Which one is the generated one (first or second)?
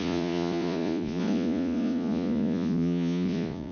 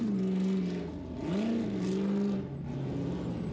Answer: first